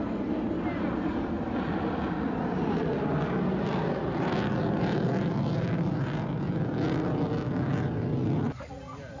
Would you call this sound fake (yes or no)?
no